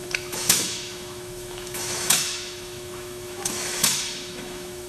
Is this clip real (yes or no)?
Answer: no